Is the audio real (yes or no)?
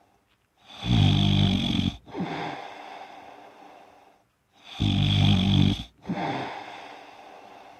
yes